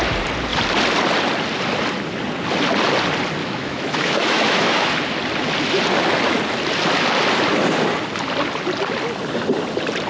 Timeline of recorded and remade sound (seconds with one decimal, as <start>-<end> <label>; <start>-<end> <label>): 0.0-3.4 recorded; 3.4-4.9 remade; 4.9-10.1 recorded